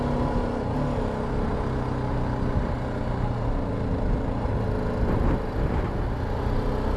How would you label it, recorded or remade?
recorded